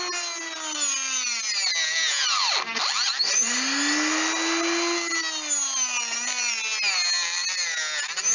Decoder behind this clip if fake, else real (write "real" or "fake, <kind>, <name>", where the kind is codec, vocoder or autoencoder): real